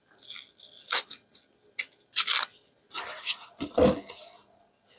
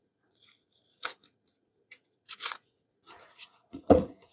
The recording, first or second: first